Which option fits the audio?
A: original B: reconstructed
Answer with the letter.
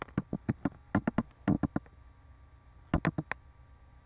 A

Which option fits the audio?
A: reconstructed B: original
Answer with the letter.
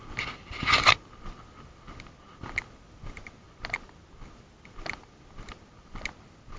B